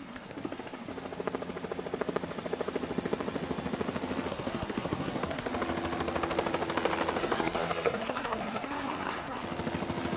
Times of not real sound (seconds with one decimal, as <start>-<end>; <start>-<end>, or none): 0.0-0.9; 4.3-5.5; 7.2-9.4